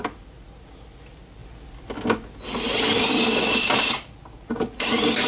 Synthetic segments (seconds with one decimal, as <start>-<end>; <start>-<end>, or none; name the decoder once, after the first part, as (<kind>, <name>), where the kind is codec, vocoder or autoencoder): none